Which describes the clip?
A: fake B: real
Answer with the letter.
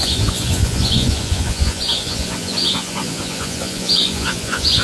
A